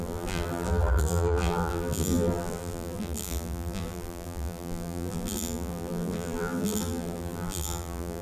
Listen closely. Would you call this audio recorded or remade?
remade